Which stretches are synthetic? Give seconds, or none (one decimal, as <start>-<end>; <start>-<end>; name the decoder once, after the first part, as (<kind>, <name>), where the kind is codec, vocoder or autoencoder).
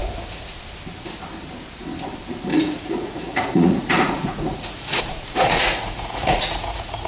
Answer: 0.0-0.6 (vocoder, Vocos); 2.5-7.1